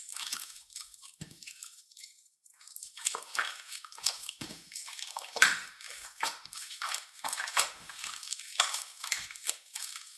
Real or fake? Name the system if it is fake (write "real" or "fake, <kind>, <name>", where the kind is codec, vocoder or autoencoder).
fake, autoencoder, DAC-VAE